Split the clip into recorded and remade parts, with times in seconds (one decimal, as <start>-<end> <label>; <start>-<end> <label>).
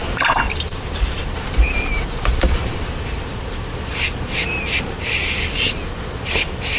0.0-3.9 remade; 3.9-6.8 recorded